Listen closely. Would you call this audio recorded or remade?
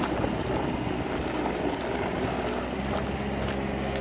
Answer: recorded